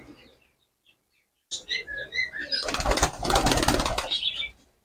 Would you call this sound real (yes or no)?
yes